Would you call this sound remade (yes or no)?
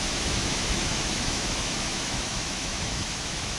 yes